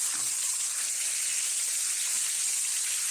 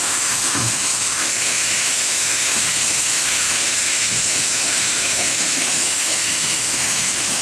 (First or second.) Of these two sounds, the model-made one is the second